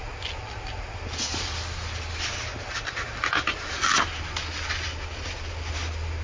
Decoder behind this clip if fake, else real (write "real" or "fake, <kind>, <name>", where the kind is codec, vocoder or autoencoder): real